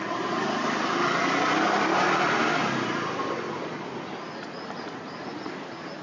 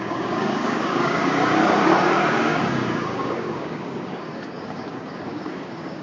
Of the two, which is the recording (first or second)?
first